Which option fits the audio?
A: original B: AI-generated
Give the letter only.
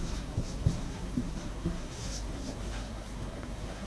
B